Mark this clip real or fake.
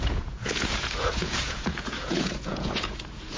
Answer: fake